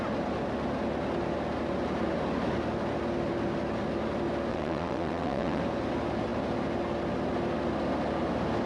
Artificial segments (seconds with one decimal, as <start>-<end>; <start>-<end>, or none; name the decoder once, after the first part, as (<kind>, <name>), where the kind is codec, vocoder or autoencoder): 4.5-5.6 (vocoder, WaveNeXt)